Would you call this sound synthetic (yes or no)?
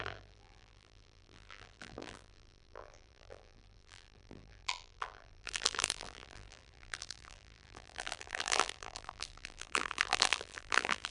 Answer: yes